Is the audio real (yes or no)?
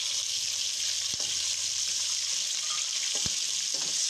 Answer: yes